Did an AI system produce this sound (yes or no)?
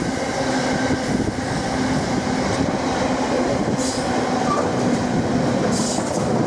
no